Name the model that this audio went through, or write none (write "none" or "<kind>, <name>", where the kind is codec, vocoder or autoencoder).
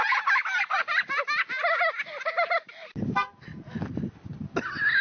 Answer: none